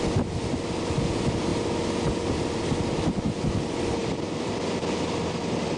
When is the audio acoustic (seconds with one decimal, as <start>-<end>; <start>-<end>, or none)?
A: 1.5-2.9